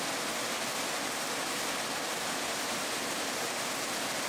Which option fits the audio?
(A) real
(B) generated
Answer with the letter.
A